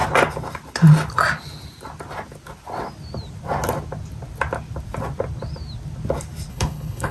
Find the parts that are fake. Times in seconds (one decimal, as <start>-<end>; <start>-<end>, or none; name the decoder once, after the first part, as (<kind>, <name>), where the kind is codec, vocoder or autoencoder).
6.5-7.1 (codec, HILCodec)